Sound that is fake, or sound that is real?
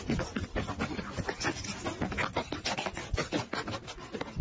real